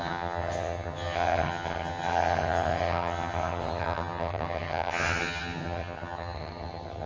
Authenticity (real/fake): fake